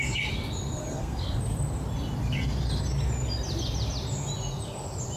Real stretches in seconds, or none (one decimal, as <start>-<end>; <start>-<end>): 0.0-0.9; 1.4-5.2